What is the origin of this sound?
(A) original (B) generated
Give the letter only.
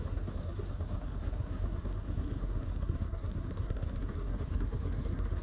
B